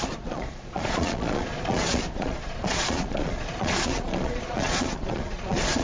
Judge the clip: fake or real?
fake